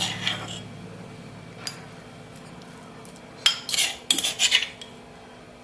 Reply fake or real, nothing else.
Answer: real